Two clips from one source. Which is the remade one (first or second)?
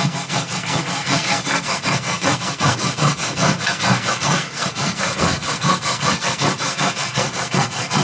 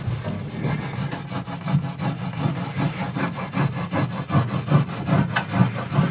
first